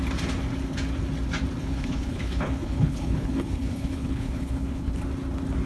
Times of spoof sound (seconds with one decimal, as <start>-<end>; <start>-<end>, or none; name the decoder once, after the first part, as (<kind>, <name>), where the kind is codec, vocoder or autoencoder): 1.6-5.0 (codec, HILCodec)